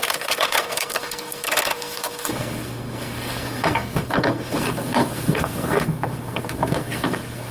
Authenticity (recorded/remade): remade